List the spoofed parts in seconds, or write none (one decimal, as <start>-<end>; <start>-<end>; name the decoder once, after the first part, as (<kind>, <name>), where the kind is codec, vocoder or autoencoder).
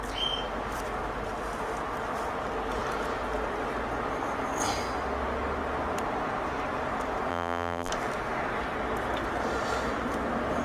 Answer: 7.3-7.9 (vocoder, BigVGAN v2)